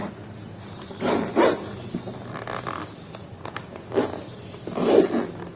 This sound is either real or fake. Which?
real